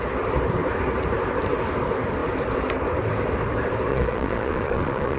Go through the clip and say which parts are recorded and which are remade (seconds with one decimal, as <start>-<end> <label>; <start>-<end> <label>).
0.0-3.9 recorded; 3.9-5.2 remade